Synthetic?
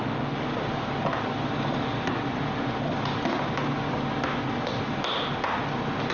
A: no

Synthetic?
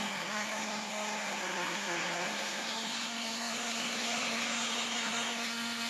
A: yes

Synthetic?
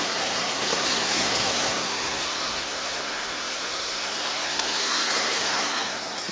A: yes